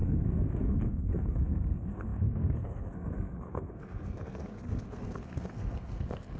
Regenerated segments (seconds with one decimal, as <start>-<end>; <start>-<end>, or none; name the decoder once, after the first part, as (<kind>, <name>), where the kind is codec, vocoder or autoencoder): 0.0-6.4 (codec, SNAC)